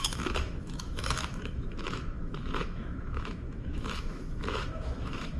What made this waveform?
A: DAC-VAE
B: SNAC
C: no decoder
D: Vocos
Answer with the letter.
A